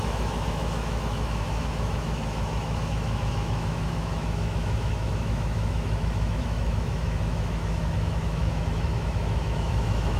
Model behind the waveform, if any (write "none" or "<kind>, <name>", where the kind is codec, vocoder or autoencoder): autoencoder, DAC-VAE